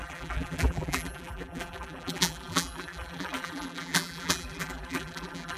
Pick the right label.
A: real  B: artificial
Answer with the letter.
B